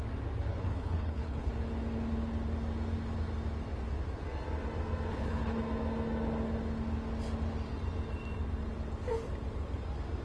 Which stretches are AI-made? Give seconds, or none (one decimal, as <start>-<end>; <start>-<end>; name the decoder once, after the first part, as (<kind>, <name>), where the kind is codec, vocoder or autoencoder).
0.5-1.5 (codec, HILCodec); 5.1-5.6